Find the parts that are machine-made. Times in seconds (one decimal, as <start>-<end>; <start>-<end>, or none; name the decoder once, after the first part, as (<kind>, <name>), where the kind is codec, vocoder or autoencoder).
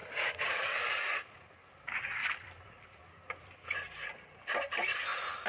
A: 0.0-1.0 (vocoder, BigVGAN v2); 2.2-5.5